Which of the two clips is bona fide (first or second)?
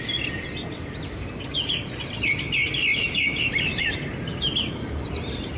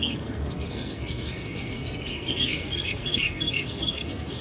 first